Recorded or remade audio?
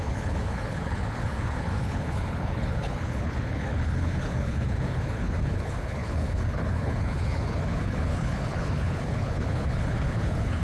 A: remade